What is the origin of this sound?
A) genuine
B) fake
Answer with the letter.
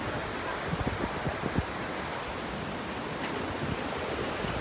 A